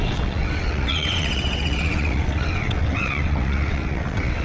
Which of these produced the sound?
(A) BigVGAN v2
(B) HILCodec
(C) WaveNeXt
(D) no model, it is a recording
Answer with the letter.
C